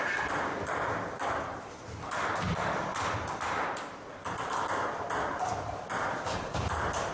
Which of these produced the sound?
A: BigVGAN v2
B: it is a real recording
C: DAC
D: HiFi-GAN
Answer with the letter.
A